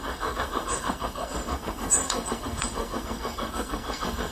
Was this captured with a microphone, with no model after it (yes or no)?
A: no